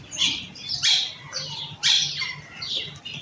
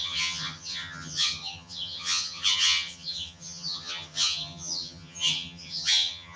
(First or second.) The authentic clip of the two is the first